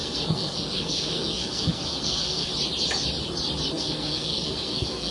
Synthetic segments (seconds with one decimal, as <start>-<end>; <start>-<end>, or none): 0.0-2.5; 3.7-5.1